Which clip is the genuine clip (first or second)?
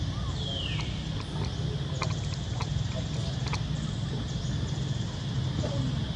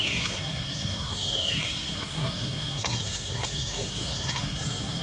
first